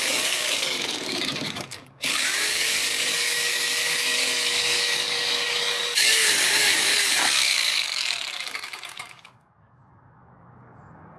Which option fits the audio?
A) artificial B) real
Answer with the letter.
A